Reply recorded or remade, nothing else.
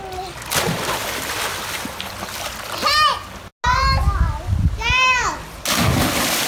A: recorded